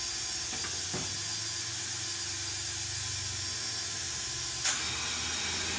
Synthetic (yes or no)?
no